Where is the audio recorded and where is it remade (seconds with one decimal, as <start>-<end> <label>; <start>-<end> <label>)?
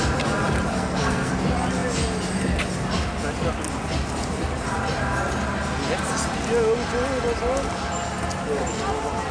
0.0-0.7 recorded; 0.7-1.3 remade; 1.3-9.3 recorded